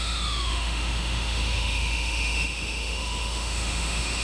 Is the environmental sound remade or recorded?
remade